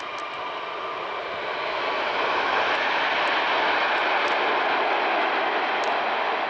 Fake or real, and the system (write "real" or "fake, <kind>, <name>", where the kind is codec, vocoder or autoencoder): real